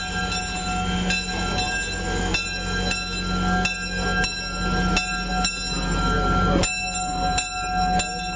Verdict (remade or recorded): recorded